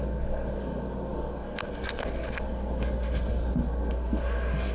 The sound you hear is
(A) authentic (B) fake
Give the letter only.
B